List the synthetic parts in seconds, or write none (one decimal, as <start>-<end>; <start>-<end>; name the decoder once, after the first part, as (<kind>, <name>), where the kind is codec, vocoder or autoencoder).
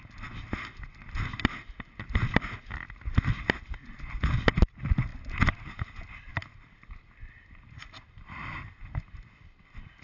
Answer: none